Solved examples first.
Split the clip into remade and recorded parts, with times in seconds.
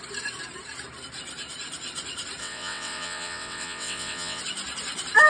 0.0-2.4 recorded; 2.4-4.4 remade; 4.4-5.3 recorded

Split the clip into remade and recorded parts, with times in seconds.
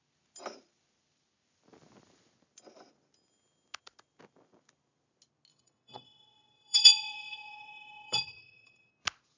0.0-5.5 recorded; 5.5-8.9 remade; 8.9-9.4 recorded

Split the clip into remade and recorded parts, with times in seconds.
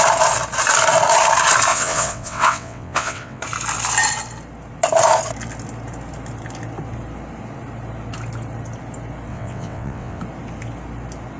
0.0-1.7 recorded; 1.7-3.4 remade; 3.4-9.3 recorded; 9.3-10.2 remade; 10.2-11.4 recorded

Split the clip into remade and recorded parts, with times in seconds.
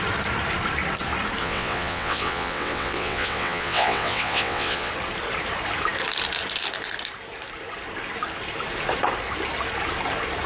0.0-1.4 recorded; 1.4-4.9 remade; 4.9-10.5 recorded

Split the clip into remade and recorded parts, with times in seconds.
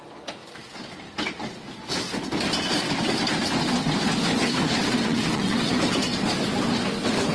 0.0-4.9 recorded; 4.9-5.7 remade; 5.7-7.3 recorded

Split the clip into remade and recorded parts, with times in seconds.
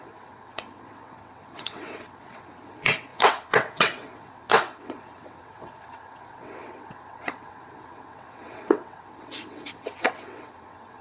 0.0-11.0 remade